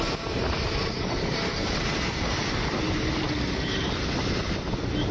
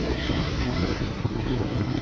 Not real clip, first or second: second